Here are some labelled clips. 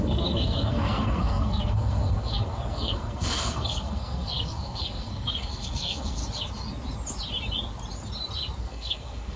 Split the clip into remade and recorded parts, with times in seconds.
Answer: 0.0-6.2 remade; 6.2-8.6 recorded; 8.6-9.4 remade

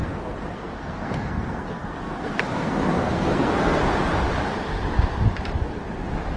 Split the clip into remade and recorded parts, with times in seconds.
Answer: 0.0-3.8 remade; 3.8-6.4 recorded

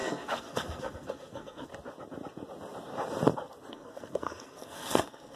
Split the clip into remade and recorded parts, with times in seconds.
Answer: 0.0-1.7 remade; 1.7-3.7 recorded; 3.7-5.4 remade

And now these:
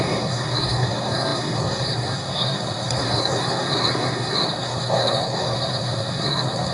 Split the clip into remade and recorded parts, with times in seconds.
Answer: 0.0-6.7 remade

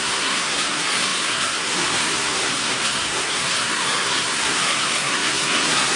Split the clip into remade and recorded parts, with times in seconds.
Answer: 0.0-6.0 remade